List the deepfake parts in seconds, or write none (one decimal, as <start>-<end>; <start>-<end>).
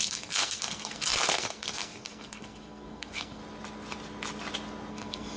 0.0-3.4; 4.9-5.4